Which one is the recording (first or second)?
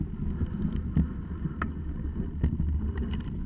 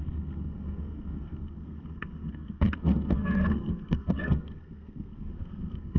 first